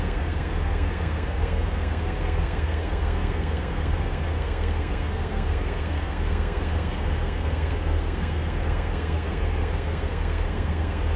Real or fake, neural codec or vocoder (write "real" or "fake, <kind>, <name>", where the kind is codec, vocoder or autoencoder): fake, codec, SNAC